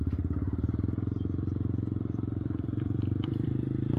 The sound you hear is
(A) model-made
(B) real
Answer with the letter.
A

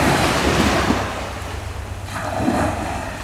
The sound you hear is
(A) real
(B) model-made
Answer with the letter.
A